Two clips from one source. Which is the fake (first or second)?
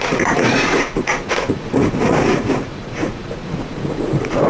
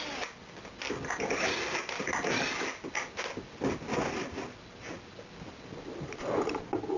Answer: first